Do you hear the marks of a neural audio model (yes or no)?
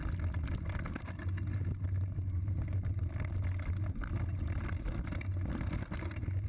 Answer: no